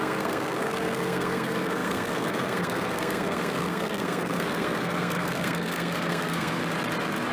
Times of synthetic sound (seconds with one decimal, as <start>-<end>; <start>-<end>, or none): 0.0-6.6